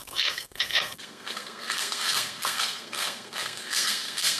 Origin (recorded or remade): remade